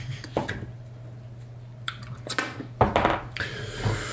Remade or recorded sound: recorded